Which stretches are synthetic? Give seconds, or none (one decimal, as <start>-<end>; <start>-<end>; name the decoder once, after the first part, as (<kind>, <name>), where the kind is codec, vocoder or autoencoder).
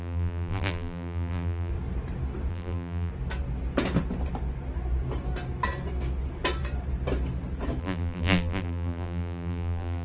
0.0-1.7 (vocoder, BigVGAN v2); 2.5-3.1; 7.8-10.0